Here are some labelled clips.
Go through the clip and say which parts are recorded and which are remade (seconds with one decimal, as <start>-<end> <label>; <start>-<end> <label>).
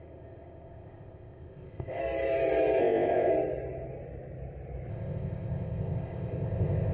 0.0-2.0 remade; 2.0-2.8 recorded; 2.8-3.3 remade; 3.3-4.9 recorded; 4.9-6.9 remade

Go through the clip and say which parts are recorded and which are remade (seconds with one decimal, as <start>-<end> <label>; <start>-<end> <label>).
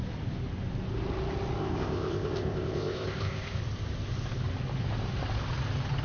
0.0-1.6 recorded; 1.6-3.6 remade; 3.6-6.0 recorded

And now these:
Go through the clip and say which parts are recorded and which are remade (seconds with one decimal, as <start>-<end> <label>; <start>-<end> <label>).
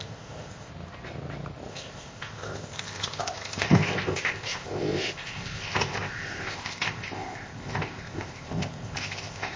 0.0-0.7 remade; 0.7-1.7 recorded; 1.7-9.6 remade